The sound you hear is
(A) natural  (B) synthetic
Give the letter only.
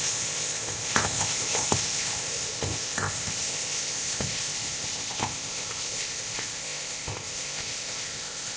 B